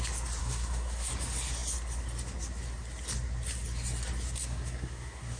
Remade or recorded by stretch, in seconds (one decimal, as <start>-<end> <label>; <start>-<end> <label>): 0.0-0.4 recorded; 0.4-1.1 remade; 1.1-4.4 recorded; 4.4-5.4 remade

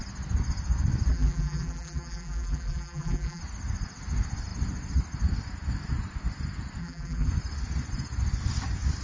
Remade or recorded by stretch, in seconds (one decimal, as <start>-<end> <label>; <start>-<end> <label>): 0.0-1.1 recorded; 1.1-3.4 remade; 3.4-6.8 recorded; 6.8-7.3 remade; 7.3-9.0 recorded

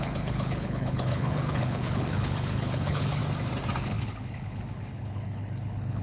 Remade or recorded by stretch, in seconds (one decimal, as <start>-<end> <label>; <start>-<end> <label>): 0.0-3.2 remade; 3.2-3.8 recorded; 3.8-6.0 remade

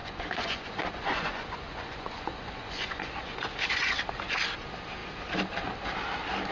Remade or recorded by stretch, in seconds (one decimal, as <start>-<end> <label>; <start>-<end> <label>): 0.0-3.9 remade; 3.9-6.5 recorded

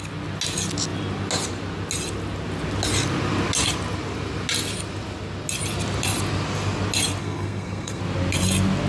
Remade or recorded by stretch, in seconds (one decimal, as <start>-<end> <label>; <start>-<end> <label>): 0.0-7.2 recorded; 7.2-8.0 remade; 8.0-8.9 recorded

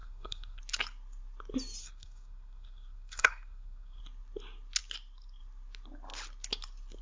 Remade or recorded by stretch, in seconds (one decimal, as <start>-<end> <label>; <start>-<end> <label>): 0.0-0.6 remade; 0.6-1.8 recorded; 1.8-4.0 remade; 4.0-7.0 recorded

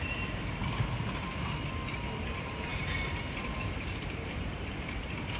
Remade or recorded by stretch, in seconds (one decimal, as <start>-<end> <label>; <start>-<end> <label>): 0.0-0.6 remade; 0.6-2.2 recorded; 2.2-5.4 remade